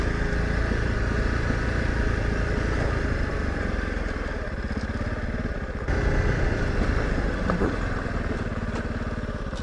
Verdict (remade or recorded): recorded